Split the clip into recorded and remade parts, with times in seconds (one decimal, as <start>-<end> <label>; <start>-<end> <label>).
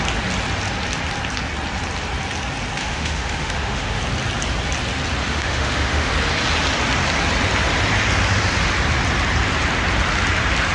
0.0-2.8 recorded; 2.8-4.0 remade; 4.0-5.2 recorded; 5.2-6.1 remade; 6.1-10.7 recorded